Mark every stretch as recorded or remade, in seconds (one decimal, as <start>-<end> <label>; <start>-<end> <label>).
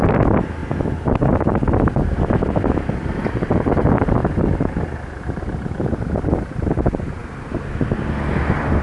0.0-8.8 recorded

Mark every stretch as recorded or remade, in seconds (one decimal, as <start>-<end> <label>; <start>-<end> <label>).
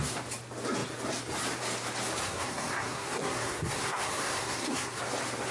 0.0-2.2 recorded; 2.2-5.0 remade; 5.0-5.5 recorded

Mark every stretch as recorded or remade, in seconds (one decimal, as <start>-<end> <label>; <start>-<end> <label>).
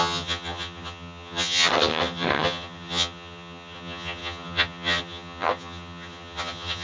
0.0-6.8 remade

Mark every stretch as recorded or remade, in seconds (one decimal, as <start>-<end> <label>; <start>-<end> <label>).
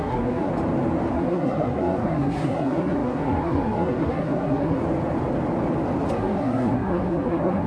0.0-0.5 remade; 0.5-1.1 recorded; 1.1-4.8 remade; 4.8-6.1 recorded; 6.1-7.7 remade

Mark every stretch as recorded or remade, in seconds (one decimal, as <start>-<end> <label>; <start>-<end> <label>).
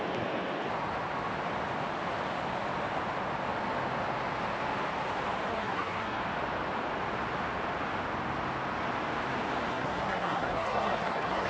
0.0-5.5 recorded; 5.5-6.2 remade; 6.2-9.7 recorded; 9.7-11.5 remade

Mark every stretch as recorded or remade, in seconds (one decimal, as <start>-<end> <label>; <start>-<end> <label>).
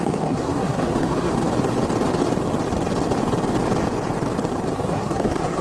0.0-1.3 remade; 1.3-4.7 recorded; 4.7-5.6 remade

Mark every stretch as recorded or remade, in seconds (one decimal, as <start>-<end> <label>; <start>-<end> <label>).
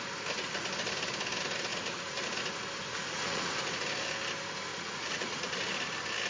0.0-1.7 recorded; 1.7-2.2 remade; 2.2-2.9 recorded; 2.9-3.5 remade; 3.5-4.7 recorded; 4.7-5.5 remade; 5.5-6.3 recorded